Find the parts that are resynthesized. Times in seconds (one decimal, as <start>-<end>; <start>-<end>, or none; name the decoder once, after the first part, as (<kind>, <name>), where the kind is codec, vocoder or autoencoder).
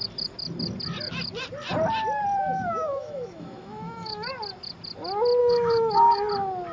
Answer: 2.5-4.3 (autoencoder, DAC-VAE); 5.4-6.3